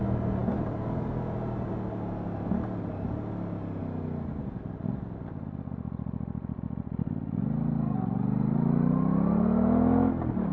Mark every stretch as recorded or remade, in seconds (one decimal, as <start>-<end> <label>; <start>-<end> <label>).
0.0-10.5 recorded